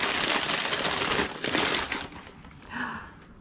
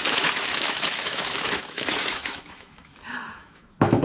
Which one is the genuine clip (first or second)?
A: first